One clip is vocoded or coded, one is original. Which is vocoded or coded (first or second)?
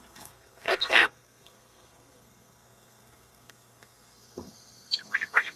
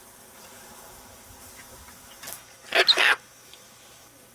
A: first